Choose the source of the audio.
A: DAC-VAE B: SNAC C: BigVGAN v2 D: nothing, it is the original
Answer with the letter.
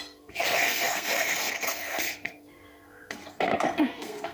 B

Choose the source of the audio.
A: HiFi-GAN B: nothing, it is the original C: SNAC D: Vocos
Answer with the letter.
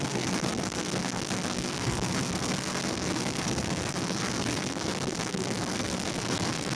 C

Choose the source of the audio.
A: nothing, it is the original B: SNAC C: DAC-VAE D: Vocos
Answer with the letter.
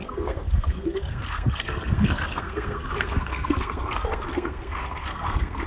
B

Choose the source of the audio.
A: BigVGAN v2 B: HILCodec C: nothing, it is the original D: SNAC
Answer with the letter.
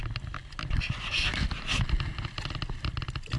C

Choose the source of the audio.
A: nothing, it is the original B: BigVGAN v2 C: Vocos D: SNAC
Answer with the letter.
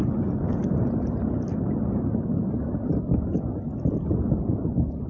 A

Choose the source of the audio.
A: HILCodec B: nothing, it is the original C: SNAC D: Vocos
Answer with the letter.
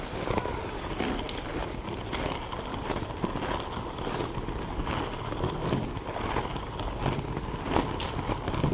B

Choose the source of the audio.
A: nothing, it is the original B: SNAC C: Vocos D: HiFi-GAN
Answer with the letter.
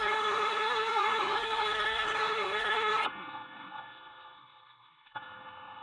B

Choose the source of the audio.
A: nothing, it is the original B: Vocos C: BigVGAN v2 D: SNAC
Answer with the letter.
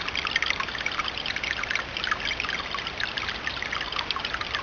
A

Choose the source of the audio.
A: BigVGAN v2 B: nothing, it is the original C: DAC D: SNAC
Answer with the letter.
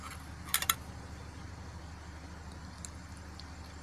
B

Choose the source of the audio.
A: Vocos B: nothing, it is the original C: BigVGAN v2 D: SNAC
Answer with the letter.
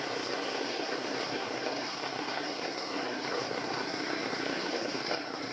D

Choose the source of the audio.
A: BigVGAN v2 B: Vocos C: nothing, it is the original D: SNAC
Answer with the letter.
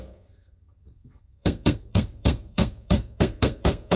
D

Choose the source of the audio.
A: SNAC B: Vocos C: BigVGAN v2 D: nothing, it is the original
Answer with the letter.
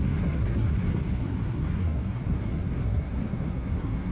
A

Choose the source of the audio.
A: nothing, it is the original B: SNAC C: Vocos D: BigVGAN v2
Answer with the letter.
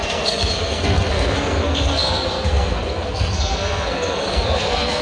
B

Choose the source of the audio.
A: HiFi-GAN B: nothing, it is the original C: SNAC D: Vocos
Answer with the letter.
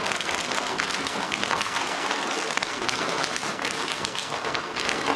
C